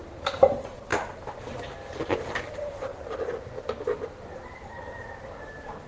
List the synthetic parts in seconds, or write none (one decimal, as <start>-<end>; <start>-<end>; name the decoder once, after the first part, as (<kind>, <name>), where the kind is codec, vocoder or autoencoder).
0.0-0.9 (vocoder, BigVGAN v2); 2.1-2.9; 4.8-5.9